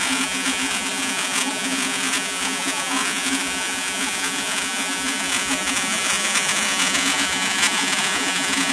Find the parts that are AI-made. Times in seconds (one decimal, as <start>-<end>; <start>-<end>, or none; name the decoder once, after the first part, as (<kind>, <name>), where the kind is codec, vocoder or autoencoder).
0.0-8.7 (vocoder, Vocos)